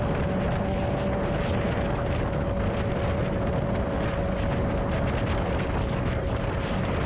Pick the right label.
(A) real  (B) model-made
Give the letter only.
A